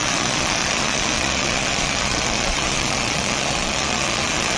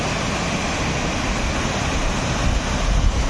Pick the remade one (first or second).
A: first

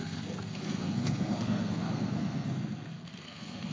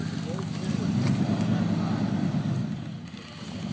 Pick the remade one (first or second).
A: first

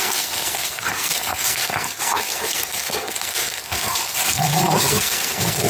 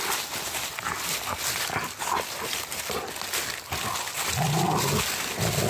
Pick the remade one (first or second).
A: first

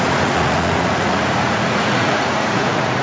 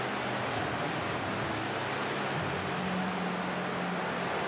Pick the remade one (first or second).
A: first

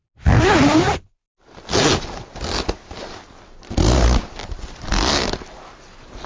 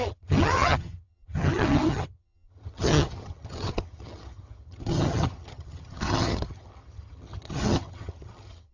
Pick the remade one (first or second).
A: second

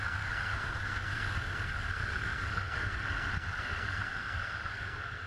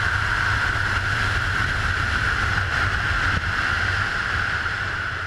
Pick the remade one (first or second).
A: first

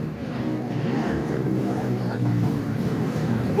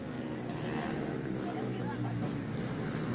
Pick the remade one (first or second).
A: first